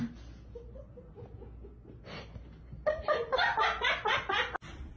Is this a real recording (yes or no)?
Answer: yes